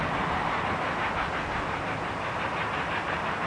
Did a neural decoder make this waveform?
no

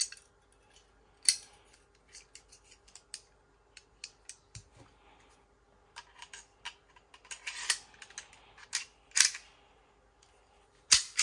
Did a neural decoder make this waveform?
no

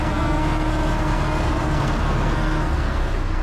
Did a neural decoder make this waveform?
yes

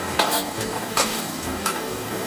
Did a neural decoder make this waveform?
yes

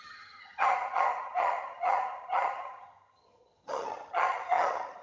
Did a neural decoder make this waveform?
yes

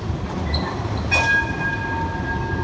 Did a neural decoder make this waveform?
no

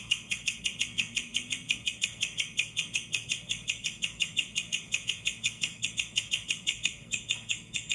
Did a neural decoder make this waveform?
yes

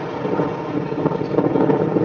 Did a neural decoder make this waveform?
yes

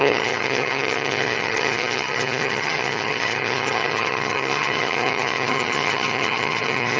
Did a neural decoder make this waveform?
yes